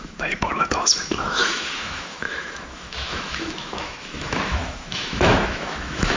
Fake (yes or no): yes